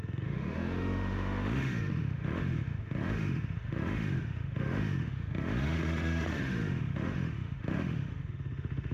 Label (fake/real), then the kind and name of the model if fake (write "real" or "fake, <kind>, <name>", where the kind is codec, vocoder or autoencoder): fake, autoencoder, DAC-VAE